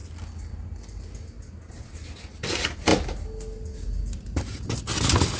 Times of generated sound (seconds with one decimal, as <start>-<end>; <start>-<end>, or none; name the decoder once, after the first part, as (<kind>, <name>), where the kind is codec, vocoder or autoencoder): none